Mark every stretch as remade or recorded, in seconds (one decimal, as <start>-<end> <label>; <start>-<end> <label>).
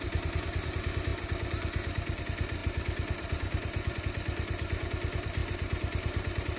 0.0-2.6 recorded; 2.6-4.0 remade; 4.0-5.4 recorded; 5.4-6.6 remade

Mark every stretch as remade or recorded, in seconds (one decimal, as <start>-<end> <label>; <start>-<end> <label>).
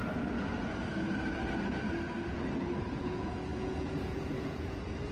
0.0-2.8 recorded; 2.8-5.1 remade